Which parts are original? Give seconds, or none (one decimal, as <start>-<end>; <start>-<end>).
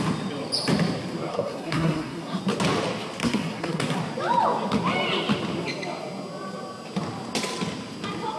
0.0-1.3; 2.4-3.2; 4.0-8.4